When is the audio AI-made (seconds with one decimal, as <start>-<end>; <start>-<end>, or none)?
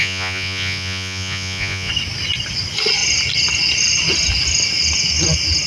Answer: 0.0-1.9